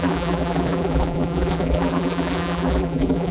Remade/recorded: remade